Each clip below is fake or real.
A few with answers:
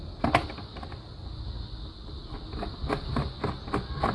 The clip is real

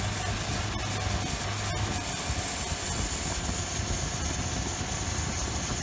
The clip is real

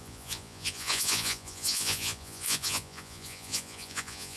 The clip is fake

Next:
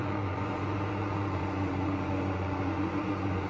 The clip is fake